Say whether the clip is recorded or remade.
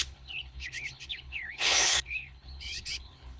remade